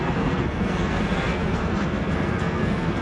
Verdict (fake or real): fake